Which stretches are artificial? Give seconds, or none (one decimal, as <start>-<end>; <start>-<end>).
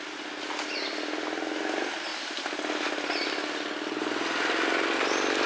none